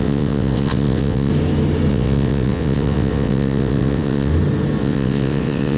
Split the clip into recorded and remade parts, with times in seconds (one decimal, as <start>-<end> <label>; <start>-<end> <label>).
0.0-1.3 remade; 1.3-1.9 recorded; 1.9-4.3 remade; 4.3-4.8 recorded; 4.8-5.8 remade